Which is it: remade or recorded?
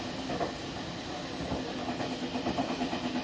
recorded